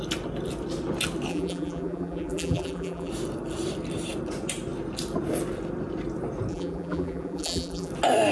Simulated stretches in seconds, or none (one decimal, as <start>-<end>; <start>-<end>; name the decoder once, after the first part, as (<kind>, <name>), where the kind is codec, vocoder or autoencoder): 1.3-3.1 (vocoder, BigVGAN v2); 6.5-7.9